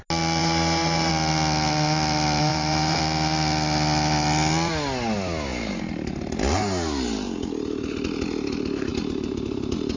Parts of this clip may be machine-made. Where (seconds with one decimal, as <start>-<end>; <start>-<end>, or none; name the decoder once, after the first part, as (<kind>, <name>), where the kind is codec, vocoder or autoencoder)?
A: 0.4-1.1 (vocoder, BigVGAN v2); 2.5-3.0; 5.5-6.1; 8.9-10.0